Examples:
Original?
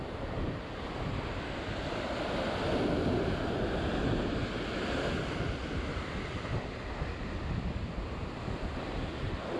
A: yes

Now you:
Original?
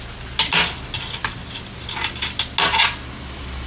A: yes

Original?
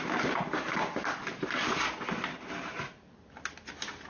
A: yes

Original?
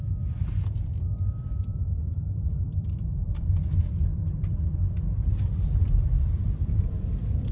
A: no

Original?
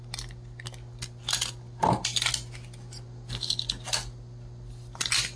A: yes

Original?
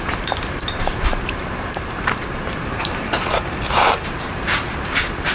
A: no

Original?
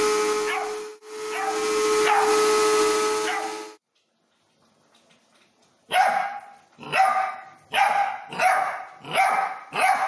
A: yes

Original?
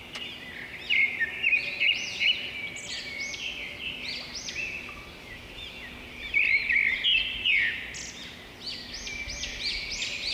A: yes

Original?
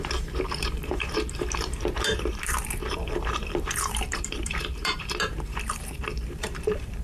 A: no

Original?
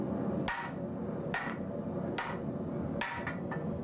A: yes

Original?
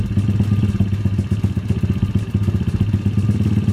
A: yes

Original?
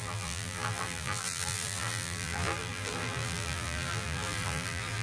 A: no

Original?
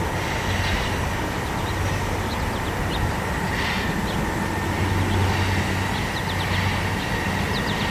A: yes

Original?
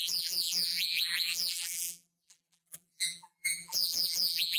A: no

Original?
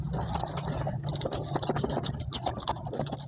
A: yes